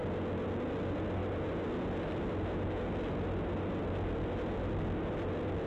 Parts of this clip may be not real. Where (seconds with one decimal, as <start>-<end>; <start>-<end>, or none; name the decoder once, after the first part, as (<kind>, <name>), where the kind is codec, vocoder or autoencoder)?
none